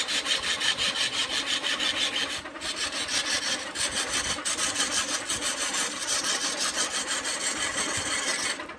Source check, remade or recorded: recorded